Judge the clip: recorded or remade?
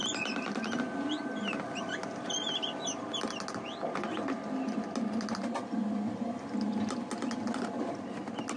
recorded